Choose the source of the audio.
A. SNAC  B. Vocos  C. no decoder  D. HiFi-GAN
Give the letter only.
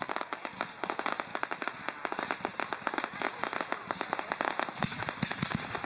C